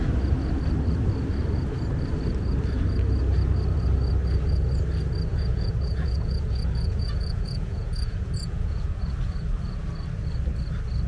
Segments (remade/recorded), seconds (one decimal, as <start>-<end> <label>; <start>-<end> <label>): 0.0-5.3 recorded; 5.3-9.0 remade; 9.0-11.1 recorded